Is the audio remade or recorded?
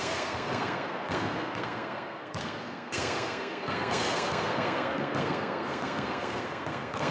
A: remade